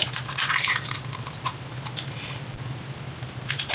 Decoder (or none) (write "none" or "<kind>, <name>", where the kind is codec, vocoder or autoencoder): none